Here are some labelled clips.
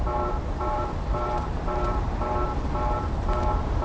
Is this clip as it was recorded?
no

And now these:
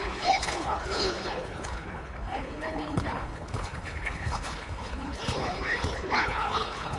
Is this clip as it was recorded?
no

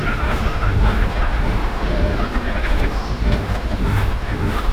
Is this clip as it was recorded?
no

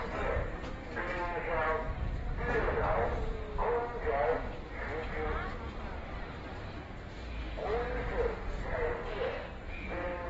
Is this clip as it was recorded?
yes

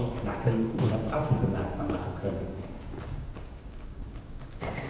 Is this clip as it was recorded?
no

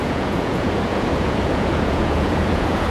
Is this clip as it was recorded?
no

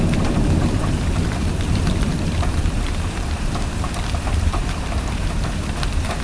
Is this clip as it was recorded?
no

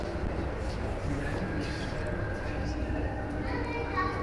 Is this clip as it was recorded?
yes